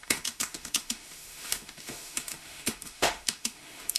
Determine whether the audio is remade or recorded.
remade